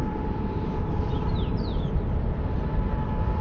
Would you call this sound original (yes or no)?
no